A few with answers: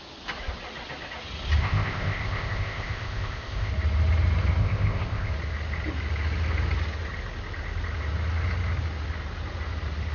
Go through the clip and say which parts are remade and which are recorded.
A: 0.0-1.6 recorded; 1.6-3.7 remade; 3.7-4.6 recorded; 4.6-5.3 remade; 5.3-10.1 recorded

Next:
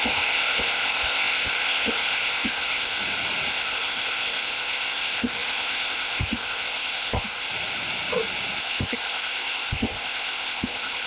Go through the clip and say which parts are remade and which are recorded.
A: 0.0-3.0 remade; 3.0-3.5 recorded; 3.5-7.5 remade; 7.5-8.6 recorded; 8.6-11.1 remade

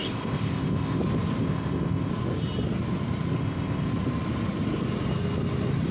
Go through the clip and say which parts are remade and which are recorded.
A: 0.0-1.0 remade; 1.0-1.4 recorded; 1.4-2.1 remade; 2.1-3.4 recorded; 3.4-3.9 remade; 3.9-5.9 recorded